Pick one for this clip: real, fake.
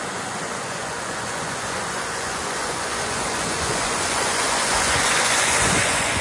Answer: fake